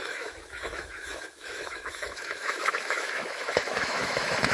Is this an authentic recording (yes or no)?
no